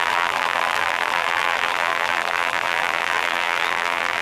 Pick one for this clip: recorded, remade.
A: remade